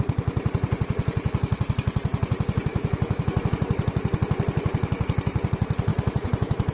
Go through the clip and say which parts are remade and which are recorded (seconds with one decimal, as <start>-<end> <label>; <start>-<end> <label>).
0.0-2.7 recorded; 2.7-3.5 remade; 3.5-5.9 recorded; 5.9-6.7 remade

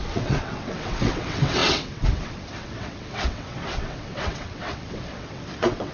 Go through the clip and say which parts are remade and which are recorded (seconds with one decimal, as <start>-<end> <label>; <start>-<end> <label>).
0.0-5.9 remade

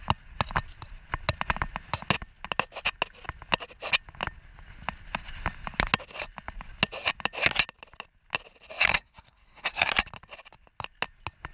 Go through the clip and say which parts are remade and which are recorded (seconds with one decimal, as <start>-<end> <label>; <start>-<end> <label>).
0.0-8.9 recorded; 8.9-9.9 remade; 9.9-11.5 recorded

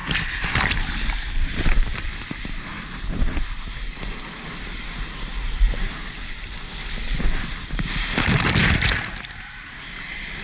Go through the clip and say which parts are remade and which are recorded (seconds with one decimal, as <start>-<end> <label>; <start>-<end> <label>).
0.0-10.4 recorded